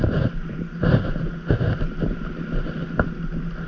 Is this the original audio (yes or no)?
yes